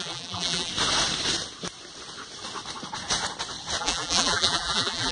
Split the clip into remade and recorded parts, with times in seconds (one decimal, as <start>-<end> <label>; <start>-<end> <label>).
0.0-0.7 remade; 0.7-3.8 recorded; 3.8-5.1 remade